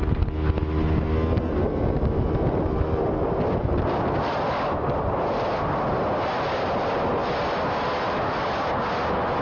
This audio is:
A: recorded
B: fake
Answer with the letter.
A